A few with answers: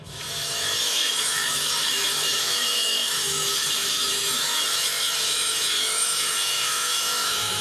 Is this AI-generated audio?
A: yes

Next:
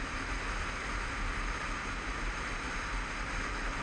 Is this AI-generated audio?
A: no